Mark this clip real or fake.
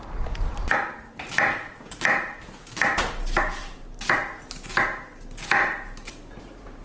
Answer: real